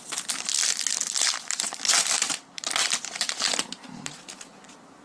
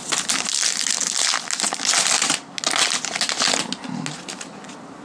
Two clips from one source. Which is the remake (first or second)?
first